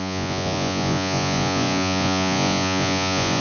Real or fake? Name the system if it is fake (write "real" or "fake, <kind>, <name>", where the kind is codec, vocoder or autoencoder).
fake, vocoder, Vocos